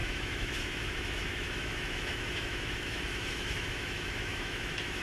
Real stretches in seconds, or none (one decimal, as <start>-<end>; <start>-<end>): none